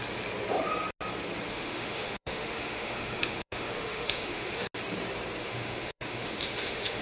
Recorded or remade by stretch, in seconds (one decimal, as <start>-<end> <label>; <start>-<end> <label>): 0.0-1.5 recorded; 1.5-4.7 remade; 4.7-5.4 recorded; 5.4-7.0 remade